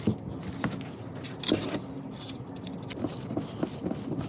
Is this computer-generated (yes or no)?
no